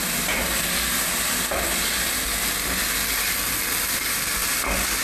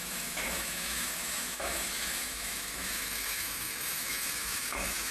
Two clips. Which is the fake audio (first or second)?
second